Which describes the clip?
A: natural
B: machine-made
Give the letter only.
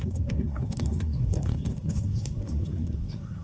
B